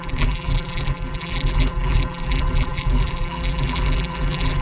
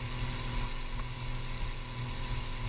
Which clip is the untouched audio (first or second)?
second